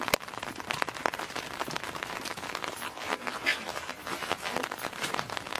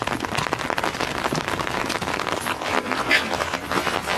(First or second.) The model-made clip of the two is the first